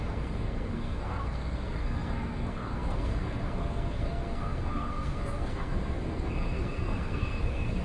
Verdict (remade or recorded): remade